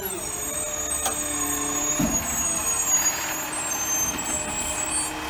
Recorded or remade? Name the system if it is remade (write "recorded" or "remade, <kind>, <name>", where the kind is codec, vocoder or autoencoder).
recorded